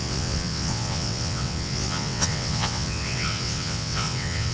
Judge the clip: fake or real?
fake